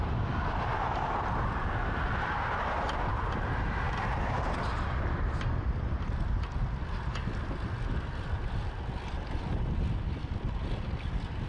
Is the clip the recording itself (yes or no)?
yes